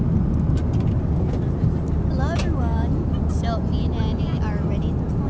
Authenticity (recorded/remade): recorded